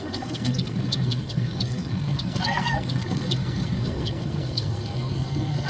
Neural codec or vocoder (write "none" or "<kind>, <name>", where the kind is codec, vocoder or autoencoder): codec, SNAC